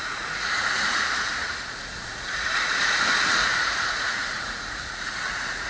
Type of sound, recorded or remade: remade